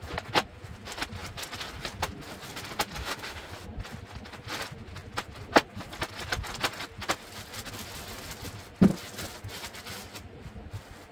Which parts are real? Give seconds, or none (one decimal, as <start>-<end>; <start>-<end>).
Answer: 0.0-3.0; 3.5-11.1